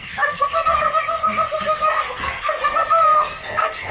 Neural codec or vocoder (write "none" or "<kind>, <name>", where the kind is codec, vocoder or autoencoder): codec, SNAC